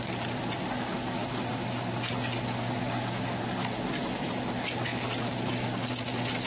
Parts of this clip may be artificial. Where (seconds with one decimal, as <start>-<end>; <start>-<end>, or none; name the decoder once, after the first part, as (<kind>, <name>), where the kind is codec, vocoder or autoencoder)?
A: none